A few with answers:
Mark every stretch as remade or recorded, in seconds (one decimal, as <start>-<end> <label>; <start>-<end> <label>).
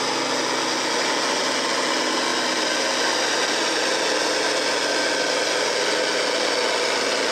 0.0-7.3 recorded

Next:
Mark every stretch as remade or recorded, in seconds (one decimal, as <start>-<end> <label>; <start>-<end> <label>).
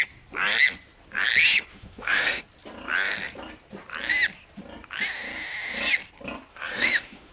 0.0-1.7 recorded; 1.7-2.4 remade; 2.4-6.5 recorded; 6.5-7.3 remade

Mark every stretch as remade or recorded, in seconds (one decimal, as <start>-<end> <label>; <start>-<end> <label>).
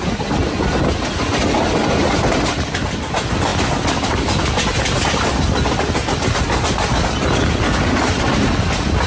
0.0-9.1 recorded